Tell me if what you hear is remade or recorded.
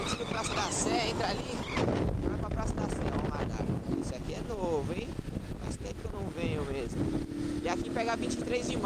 recorded